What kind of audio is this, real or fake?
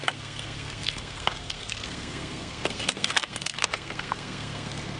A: fake